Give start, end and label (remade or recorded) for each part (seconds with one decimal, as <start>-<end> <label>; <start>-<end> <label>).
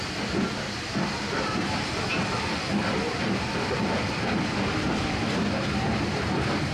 0.0-6.7 recorded